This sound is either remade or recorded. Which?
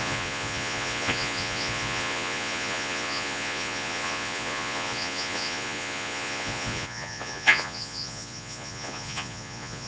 remade